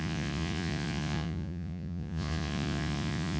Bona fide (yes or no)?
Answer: no